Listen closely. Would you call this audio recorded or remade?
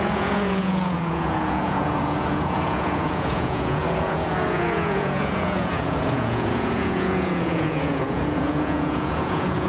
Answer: remade